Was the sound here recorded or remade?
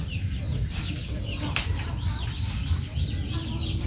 recorded